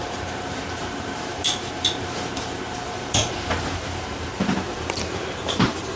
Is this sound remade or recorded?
remade